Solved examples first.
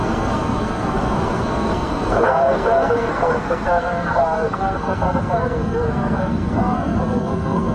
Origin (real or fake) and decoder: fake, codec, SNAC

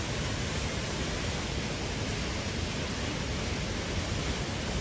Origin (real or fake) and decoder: real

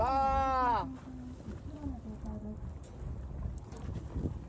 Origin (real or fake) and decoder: real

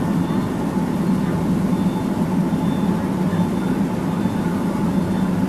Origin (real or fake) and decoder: real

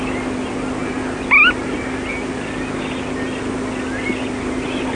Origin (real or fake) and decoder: real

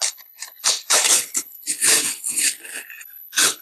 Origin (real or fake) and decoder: fake, codec, HILCodec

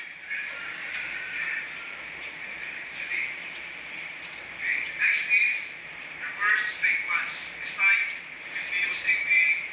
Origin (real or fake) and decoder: fake, vocoder, BigVGAN v2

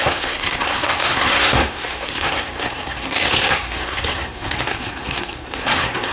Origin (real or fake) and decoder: fake, codec, SNAC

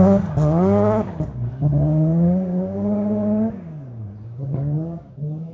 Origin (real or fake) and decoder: fake, codec, DAC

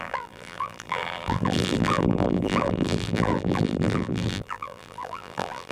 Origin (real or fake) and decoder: fake, vocoder, BigVGAN v2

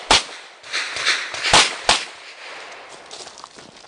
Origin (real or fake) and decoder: real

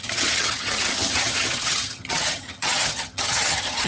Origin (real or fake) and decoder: fake, vocoder, HiFi-GAN